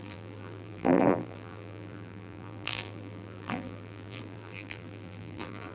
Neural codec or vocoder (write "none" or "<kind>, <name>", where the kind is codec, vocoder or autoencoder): vocoder, BigVGAN v2